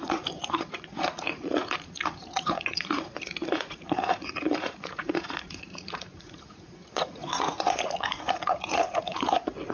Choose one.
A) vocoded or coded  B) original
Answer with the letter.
A